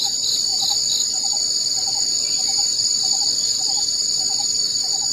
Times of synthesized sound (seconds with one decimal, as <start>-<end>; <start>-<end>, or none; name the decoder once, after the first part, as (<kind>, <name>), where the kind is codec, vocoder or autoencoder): 0.0-0.5 (vocoder, BigVGAN v2); 3.6-5.1